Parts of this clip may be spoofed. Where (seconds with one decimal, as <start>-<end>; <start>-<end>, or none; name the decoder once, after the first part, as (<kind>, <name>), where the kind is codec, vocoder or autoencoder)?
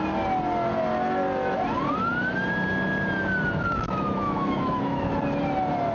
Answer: 3.7-5.1 (autoencoder, DAC-VAE)